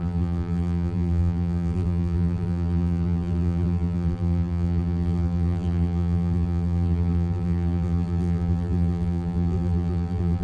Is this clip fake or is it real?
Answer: fake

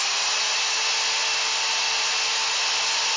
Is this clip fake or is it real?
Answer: real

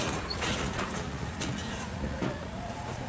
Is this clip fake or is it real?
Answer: fake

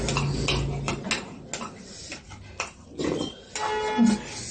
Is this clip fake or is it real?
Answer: real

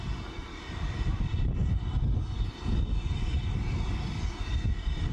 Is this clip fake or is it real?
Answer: real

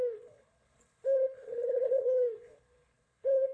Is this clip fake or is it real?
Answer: fake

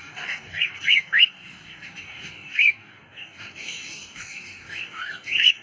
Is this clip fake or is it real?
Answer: fake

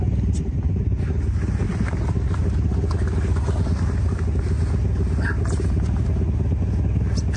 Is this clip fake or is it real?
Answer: real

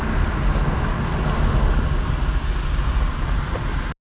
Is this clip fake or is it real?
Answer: real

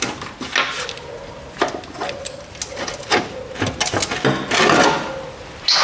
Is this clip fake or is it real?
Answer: real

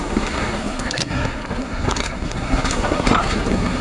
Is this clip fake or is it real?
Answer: fake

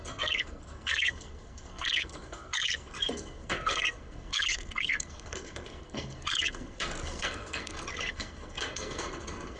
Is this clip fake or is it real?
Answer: fake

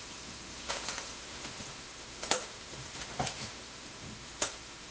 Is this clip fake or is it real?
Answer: fake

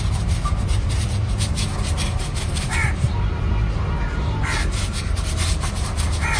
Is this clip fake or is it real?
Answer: fake